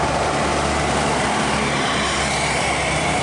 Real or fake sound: fake